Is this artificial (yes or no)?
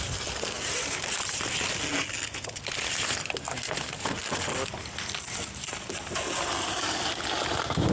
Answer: no